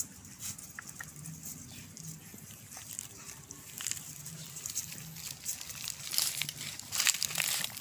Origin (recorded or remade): remade